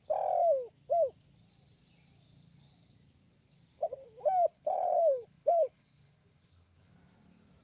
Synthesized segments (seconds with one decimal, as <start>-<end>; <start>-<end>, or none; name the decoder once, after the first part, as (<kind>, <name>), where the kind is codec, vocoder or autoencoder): 4.5-6.9 (codec, HILCodec)